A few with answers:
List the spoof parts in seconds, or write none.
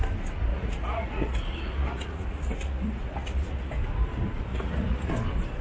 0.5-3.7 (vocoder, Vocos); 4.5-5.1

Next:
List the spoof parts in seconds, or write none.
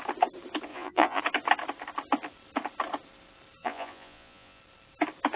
0.7-1.2 (vocoder, Vocos); 3.6-4.6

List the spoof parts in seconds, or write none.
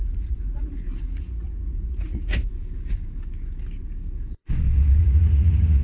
0.0-2.5 (vocoder, Vocos); 5.0-5.8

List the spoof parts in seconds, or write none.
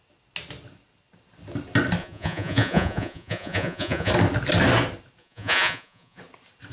2.0-4.1 (vocoder, Vocos); 5.2-6.2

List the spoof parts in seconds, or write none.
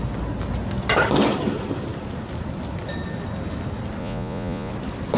4.0-4.7 (vocoder, Vocos)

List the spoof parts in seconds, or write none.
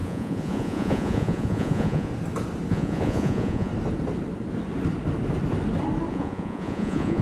0.0-2.1 (vocoder, Vocos); 2.7-3.7; 6.1-7.2